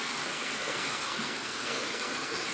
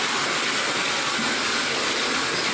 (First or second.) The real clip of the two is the second